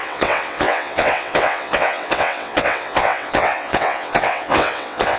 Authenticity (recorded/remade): remade